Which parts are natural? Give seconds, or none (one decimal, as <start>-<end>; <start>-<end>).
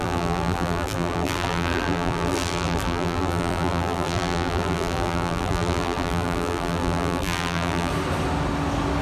7.9-9.0